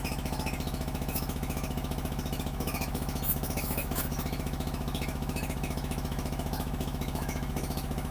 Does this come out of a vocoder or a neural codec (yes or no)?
yes